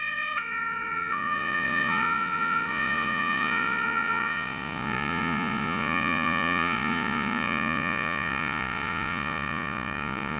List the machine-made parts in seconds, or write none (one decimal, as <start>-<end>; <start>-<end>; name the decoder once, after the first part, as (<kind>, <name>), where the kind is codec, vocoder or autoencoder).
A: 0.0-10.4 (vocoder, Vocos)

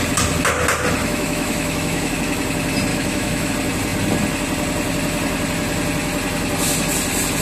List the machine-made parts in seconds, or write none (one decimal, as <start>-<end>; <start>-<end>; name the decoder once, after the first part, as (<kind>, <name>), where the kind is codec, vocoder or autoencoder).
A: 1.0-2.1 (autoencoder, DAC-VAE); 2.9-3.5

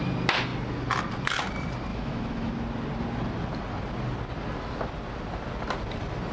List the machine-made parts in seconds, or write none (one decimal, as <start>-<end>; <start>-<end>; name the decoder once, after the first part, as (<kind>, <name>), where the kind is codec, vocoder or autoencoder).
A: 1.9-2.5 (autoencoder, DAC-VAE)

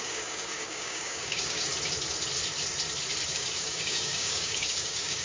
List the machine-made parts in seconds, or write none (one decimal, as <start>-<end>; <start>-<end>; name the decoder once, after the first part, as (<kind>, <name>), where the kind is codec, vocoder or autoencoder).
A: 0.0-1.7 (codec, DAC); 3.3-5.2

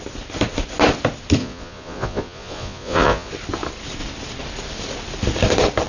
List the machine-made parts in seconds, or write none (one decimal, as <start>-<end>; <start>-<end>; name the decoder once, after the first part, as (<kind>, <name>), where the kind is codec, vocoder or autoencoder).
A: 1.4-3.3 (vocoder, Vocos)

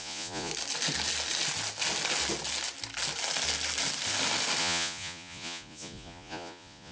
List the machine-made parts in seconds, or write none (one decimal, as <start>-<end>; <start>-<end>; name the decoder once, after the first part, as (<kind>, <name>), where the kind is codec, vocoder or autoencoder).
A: 0.0-0.5 (vocoder, Vocos); 4.6-6.9